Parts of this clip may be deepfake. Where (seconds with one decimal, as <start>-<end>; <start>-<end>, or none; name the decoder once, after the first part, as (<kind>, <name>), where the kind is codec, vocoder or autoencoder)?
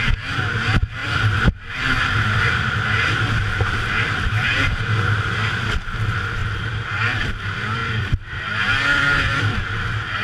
0.0-10.2 (vocoder, BigVGAN v2)